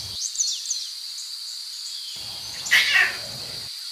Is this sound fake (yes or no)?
no